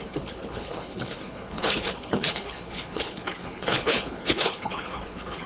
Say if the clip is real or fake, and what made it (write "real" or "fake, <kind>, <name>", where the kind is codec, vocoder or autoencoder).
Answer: fake, codec, HILCodec